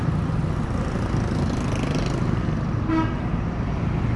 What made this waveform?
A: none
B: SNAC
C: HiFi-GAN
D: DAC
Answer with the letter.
A